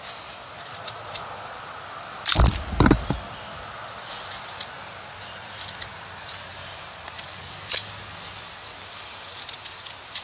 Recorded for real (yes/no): yes